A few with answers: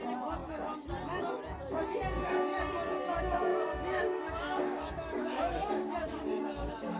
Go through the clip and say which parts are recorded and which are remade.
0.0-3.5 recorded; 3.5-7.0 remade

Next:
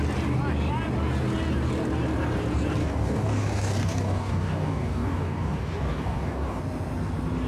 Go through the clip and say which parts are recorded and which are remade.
0.0-2.8 recorded; 2.8-6.6 remade; 6.6-7.5 recorded

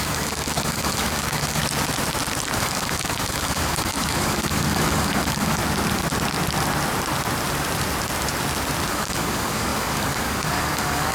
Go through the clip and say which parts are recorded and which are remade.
0.0-1.6 remade; 1.6-2.6 recorded; 2.6-5.6 remade; 5.6-8.9 recorded; 8.9-11.1 remade

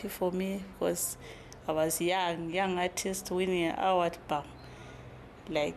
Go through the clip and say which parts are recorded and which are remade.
0.0-5.8 recorded

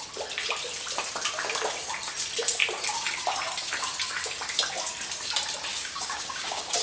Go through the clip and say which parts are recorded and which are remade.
0.0-5.7 recorded; 5.7-6.8 remade

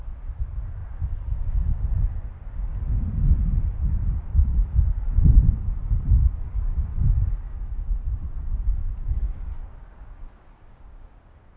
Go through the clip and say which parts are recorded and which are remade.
0.0-8.8 recorded; 8.8-11.6 remade